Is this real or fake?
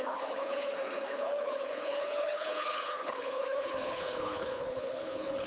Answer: fake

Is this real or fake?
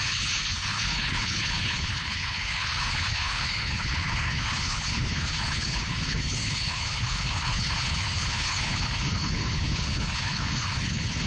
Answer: fake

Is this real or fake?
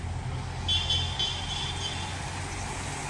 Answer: real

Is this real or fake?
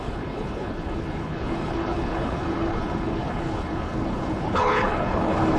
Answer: fake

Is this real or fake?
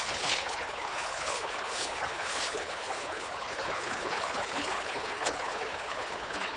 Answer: fake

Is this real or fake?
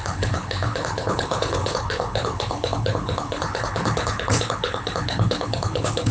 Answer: fake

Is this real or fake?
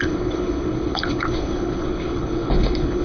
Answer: fake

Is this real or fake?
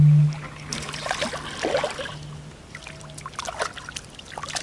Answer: real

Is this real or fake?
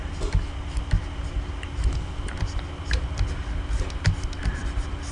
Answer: real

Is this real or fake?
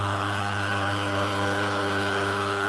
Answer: fake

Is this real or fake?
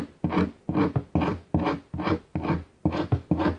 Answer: real